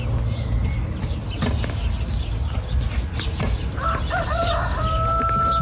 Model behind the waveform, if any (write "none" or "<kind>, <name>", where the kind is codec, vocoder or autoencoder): none